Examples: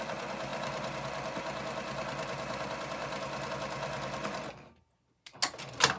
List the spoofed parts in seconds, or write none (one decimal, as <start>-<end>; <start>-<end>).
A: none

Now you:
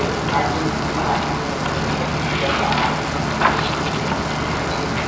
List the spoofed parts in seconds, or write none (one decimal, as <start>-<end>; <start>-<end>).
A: none

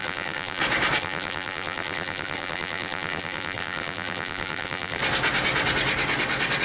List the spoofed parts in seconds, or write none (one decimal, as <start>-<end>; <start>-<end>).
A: 0.0-0.6; 1.0-5.0

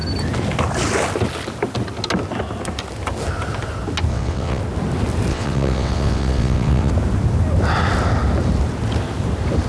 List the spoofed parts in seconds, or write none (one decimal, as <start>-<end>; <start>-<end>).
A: 4.1-4.6; 5.3-6.9